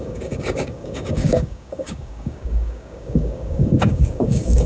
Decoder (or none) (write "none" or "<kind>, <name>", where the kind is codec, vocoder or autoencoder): codec, DAC